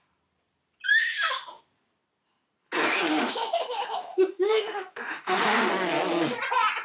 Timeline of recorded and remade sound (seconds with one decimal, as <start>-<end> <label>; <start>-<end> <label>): 0.0-0.9 recorded; 0.9-1.6 remade; 1.6-3.1 recorded; 3.1-5.7 remade; 5.7-6.8 recorded